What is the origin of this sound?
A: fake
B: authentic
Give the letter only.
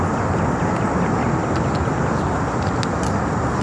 B